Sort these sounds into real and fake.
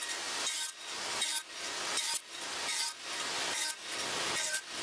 real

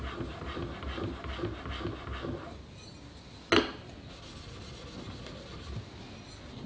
real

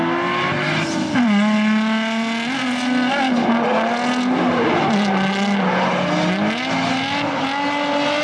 real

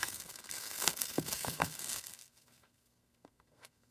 fake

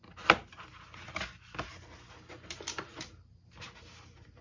real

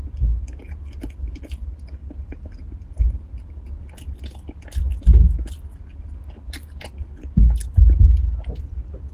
real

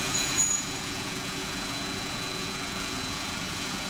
fake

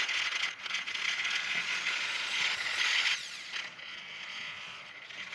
fake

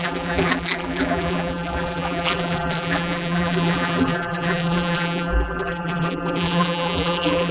fake